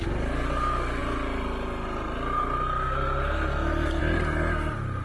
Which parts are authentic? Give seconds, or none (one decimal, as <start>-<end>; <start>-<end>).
0.0-5.0